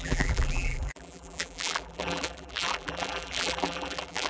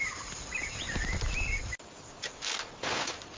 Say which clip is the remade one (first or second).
first